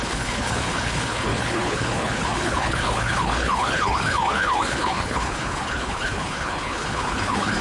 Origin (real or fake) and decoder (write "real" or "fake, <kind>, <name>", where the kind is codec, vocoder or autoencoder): fake, codec, HILCodec